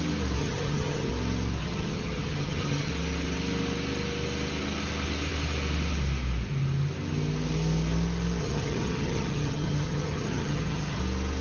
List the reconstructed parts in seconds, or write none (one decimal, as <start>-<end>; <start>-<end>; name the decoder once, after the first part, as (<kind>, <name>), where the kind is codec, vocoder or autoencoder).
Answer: 0.4-1.1 (vocoder, HiFi-GAN); 1.6-2.9; 8.4-11.0